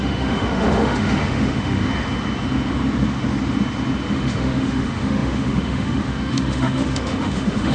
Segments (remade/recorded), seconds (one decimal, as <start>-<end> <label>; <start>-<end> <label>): 0.0-1.8 remade; 1.8-4.1 recorded; 4.1-7.7 remade